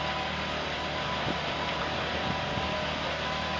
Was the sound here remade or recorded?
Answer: remade